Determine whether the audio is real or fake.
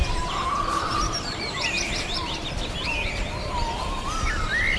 fake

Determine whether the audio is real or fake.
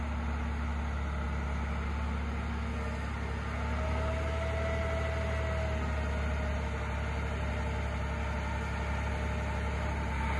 real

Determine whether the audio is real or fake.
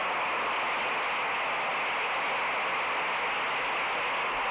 real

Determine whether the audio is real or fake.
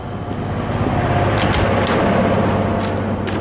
real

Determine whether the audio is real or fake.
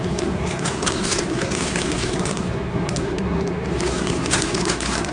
fake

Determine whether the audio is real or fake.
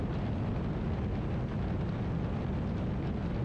real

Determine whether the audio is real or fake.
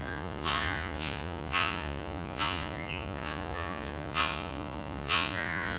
fake